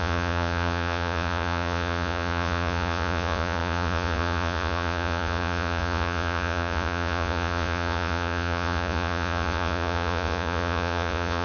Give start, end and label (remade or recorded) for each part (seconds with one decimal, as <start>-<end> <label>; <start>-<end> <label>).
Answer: 0.0-11.4 remade